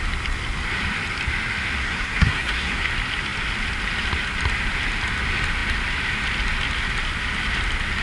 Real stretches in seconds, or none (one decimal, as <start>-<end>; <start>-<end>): 0.0-1.8; 2.9-8.0